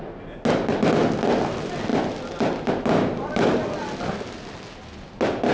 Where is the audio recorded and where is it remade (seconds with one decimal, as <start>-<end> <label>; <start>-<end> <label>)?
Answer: 0.0-5.5 recorded